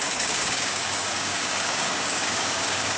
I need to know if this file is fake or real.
fake